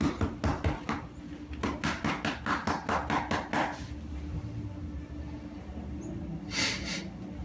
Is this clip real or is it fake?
real